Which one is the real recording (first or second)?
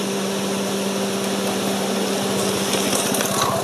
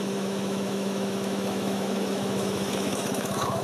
first